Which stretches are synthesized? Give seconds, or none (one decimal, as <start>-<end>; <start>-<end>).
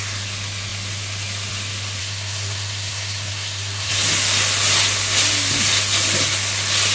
2.0-3.9